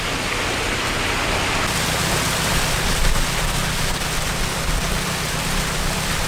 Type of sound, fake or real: real